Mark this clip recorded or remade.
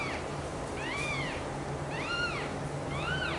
remade